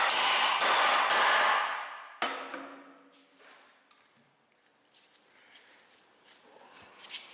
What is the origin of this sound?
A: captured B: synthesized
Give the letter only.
A